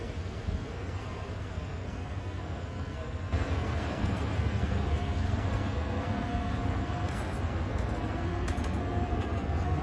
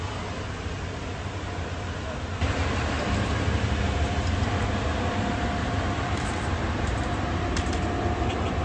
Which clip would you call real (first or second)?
second